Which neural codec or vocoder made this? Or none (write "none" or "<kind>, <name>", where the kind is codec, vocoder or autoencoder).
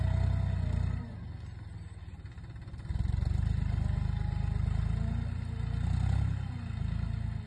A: none